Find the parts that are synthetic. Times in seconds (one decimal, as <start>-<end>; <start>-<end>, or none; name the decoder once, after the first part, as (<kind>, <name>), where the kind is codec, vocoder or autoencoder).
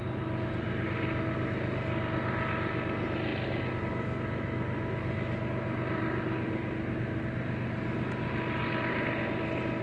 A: none